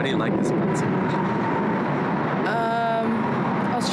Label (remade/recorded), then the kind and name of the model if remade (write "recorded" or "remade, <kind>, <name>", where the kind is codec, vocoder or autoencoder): recorded